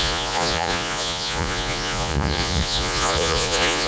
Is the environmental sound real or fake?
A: fake